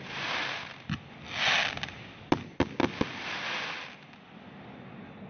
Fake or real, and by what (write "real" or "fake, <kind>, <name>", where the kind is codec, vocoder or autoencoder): real